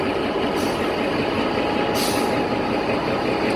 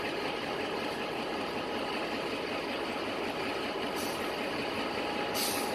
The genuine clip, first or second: first